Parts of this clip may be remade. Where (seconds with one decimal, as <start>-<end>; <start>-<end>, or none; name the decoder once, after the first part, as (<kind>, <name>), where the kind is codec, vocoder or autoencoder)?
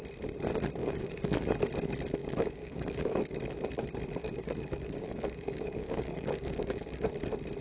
0.8-1.6 (codec, DAC); 2.2-3.4; 4.2-7.1